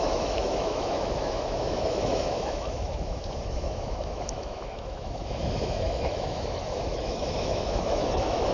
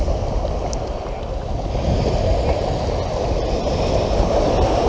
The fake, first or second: first